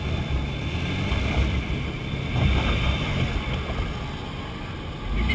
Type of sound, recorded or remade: recorded